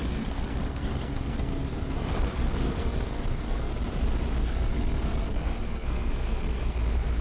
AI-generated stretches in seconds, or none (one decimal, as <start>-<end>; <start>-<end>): 0.0-3.7; 4.4-7.2